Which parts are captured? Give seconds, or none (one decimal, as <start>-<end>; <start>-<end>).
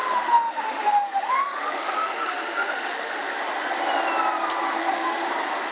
3.4-4.8; 5.3-5.7